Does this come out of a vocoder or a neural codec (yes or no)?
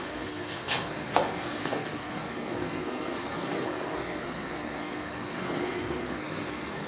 yes